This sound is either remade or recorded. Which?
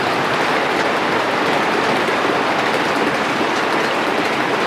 recorded